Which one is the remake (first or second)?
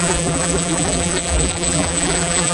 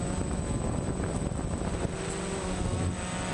first